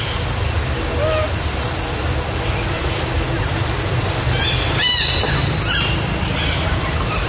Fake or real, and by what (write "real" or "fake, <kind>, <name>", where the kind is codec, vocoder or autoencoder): real